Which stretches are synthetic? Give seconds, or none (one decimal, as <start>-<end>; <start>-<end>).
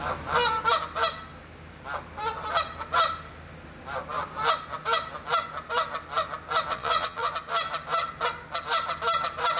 6.7-7.3